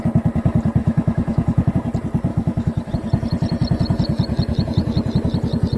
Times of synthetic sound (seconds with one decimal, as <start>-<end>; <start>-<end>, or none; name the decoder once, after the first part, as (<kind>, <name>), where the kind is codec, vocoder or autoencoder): 0.8-1.7 (autoencoder, DAC-VAE); 2.3-2.9